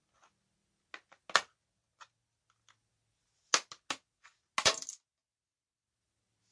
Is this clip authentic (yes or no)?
yes